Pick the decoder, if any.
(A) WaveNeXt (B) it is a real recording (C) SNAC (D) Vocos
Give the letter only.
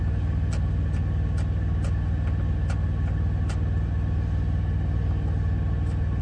B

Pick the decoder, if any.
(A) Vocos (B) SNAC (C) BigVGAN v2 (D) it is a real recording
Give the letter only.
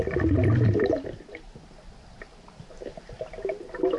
D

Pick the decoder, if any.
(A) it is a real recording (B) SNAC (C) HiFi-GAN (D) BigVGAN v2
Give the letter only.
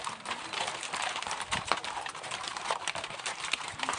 D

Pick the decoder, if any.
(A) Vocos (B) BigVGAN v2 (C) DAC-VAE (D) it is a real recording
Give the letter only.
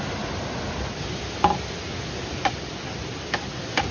D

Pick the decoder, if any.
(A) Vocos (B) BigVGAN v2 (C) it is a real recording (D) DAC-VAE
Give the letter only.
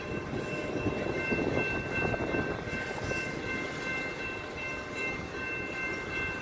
C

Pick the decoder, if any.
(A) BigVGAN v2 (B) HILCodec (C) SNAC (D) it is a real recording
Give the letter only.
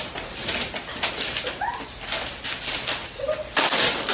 D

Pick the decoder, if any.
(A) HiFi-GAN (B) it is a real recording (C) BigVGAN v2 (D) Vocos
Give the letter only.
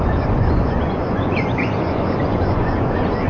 D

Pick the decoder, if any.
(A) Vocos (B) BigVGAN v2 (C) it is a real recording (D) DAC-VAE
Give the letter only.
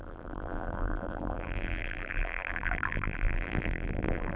B